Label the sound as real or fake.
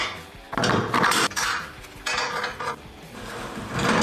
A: real